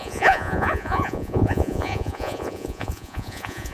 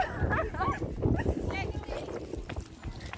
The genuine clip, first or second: second